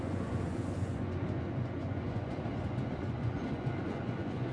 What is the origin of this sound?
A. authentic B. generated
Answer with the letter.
B